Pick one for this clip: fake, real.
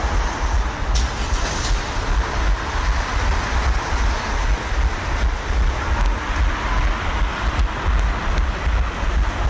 real